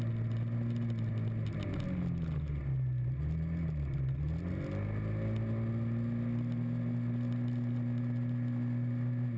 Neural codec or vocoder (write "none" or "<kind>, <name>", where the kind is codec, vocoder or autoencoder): none